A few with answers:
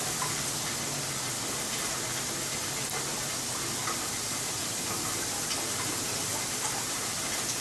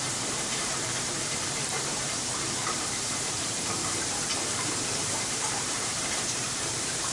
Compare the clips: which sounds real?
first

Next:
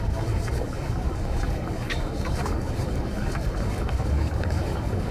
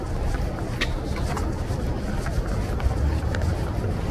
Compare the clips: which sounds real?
second